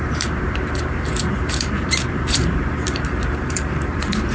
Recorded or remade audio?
remade